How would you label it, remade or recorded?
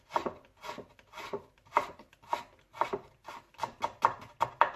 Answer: recorded